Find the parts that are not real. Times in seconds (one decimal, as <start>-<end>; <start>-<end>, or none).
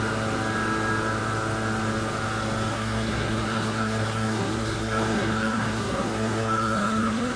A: 2.7-7.4